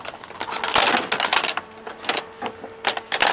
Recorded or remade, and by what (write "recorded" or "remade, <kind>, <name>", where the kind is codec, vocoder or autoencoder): recorded